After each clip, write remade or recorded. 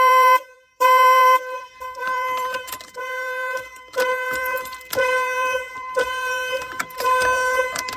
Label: remade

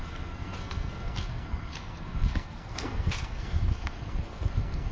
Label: remade